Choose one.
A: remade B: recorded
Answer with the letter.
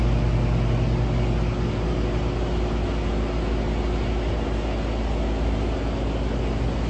B